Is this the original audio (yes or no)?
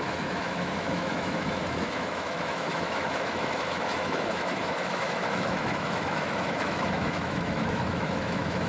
no